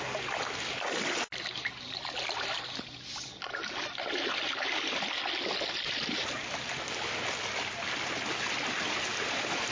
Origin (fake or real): real